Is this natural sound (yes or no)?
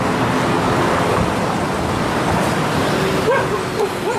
yes